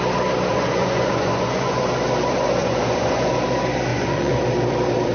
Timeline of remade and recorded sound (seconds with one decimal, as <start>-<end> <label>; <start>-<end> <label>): 0.0-0.5 recorded; 0.5-1.8 remade; 1.8-2.6 recorded; 2.6-3.3 remade; 3.3-3.9 recorded; 3.9-4.4 remade; 4.4-5.1 recorded